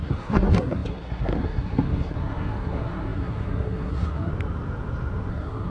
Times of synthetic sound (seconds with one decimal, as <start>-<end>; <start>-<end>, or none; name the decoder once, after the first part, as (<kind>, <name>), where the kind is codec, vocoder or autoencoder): 0.0-4.3 (codec, SNAC); 5.3-5.7